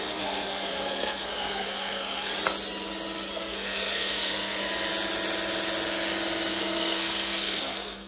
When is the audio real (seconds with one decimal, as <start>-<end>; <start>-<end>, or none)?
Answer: 2.3-3.3; 4.6-6.5